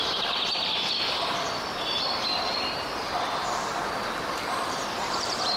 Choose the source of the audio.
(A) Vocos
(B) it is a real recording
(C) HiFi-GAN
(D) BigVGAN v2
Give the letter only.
D